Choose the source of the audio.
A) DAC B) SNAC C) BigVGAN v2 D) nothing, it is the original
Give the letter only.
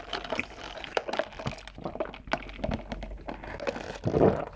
D